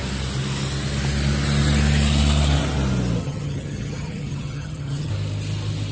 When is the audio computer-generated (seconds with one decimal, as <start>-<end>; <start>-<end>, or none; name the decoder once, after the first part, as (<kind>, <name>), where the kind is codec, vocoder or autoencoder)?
3.2-5.1 (vocoder, HiFi-GAN)

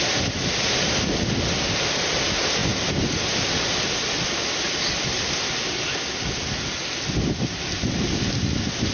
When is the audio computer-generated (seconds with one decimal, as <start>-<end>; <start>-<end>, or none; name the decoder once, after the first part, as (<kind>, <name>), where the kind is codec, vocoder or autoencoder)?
none

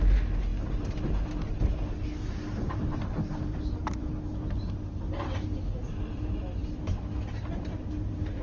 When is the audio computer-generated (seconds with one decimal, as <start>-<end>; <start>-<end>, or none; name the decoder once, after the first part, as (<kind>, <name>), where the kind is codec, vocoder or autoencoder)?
none

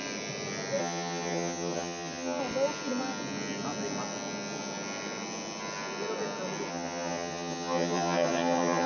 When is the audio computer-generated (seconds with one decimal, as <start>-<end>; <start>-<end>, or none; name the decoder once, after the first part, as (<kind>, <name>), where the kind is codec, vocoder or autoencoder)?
0.8-2.4 (vocoder, HiFi-GAN); 6.7-8.9

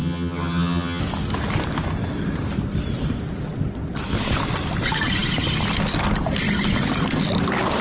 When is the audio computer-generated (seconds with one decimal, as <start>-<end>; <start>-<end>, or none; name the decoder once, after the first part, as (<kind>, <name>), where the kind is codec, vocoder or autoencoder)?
0.0-1.0 (vocoder, HiFi-GAN)